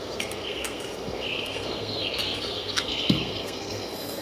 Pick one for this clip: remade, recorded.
remade